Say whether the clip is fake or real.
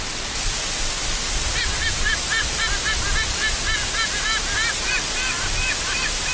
real